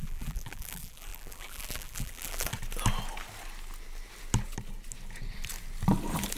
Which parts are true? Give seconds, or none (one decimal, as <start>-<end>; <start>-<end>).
2.5-6.4